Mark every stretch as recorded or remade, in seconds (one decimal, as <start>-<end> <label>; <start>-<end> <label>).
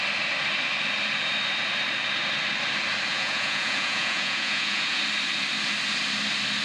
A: 0.0-3.1 recorded; 3.1-5.0 remade; 5.0-6.6 recorded